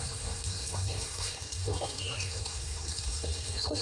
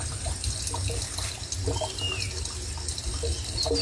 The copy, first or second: first